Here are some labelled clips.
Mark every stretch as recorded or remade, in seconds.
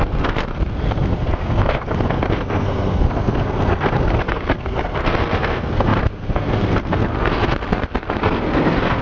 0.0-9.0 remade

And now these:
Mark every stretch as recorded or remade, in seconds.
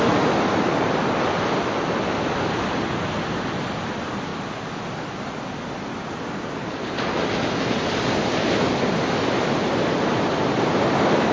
0.0-11.3 recorded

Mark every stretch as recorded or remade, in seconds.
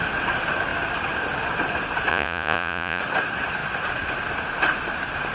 0.0-2.1 recorded; 2.1-3.0 remade; 3.0-5.3 recorded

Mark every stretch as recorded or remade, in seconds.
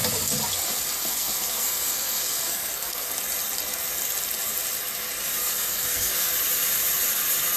0.0-1.0 recorded; 1.0-3.1 remade; 3.1-5.4 recorded; 5.4-6.3 remade; 6.3-7.6 recorded